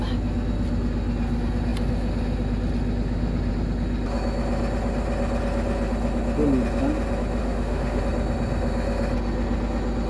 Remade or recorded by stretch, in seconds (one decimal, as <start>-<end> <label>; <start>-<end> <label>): 0.0-7.4 recorded; 7.4-8.0 remade; 8.0-10.1 recorded